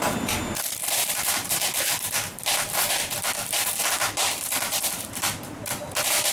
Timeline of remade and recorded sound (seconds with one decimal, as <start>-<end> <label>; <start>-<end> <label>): 0.0-1.0 recorded; 1.0-2.9 remade; 2.9-3.4 recorded; 3.4-6.3 remade